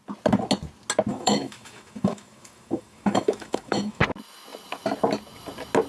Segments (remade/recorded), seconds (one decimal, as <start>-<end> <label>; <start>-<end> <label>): 0.0-1.1 recorded; 1.1-4.0 remade; 4.0-5.9 recorded